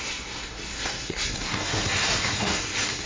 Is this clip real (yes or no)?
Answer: no